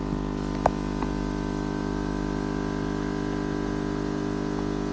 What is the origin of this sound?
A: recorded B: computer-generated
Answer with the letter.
A